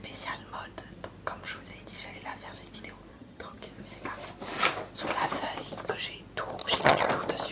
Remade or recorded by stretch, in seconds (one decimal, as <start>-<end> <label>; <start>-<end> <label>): 0.0-3.1 recorded; 3.1-3.6 remade; 3.6-6.6 recorded; 6.6-7.1 remade; 7.1-7.5 recorded